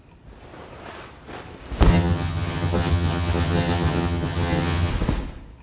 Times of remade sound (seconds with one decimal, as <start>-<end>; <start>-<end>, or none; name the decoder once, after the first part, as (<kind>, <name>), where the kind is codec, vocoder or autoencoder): 1.9-4.9 (vocoder, HiFi-GAN)